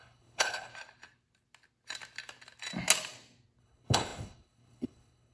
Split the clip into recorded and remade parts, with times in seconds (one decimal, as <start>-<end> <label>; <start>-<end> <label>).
0.0-0.7 remade; 0.7-3.6 recorded; 3.6-5.3 remade

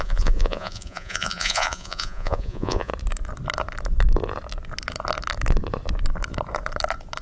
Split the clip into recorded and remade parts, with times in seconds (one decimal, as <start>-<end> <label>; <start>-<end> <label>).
0.0-2.9 remade; 2.9-7.2 recorded

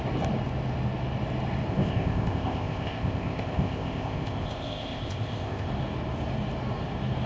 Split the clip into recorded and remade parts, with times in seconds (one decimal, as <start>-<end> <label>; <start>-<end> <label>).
0.0-1.7 recorded; 1.7-5.7 remade; 5.7-7.3 recorded